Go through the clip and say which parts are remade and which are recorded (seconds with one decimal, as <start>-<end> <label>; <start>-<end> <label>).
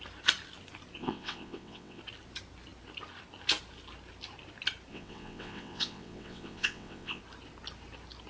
0.0-1.0 recorded; 1.0-2.0 remade; 2.0-4.9 recorded; 4.9-7.2 remade; 7.2-8.3 recorded